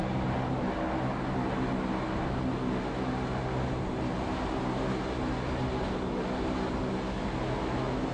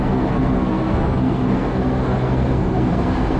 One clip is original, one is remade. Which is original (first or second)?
first